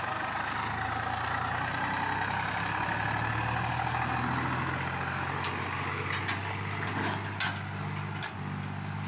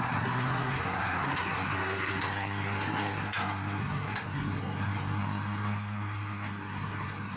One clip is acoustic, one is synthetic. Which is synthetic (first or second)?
second